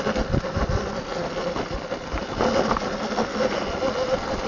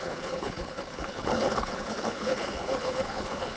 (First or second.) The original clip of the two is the first